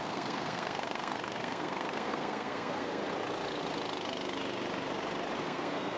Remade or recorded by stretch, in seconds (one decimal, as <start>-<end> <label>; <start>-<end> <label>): 0.0-3.0 remade; 3.0-5.4 recorded; 5.4-6.0 remade